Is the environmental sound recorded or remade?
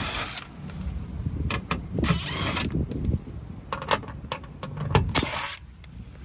recorded